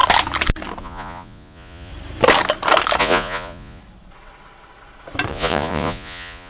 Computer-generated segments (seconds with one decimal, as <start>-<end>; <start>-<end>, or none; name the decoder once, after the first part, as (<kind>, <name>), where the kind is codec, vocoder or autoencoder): 0.8-1.9 (vocoder, Vocos); 3.0-3.8; 5.3-6.5